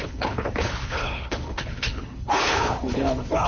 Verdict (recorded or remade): remade